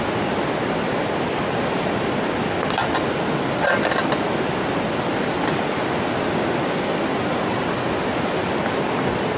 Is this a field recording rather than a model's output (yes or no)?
yes